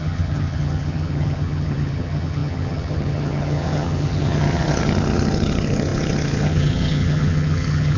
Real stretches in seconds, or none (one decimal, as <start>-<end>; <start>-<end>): none

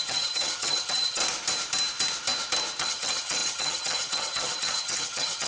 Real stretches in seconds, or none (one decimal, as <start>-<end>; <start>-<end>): 1.2-2.8

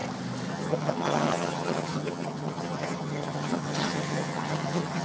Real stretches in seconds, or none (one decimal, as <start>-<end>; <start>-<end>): 0.0-0.5

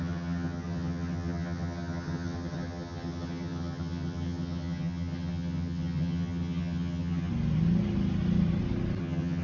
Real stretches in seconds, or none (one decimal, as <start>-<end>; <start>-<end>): 7.3-9.0

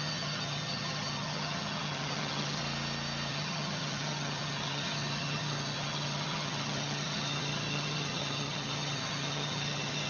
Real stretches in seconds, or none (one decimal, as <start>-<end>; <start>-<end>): 2.6-3.3

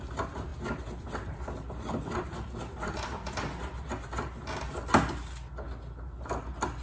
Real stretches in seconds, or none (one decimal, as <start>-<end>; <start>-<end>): 0.0-6.8